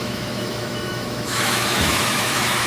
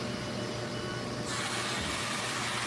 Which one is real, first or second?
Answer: second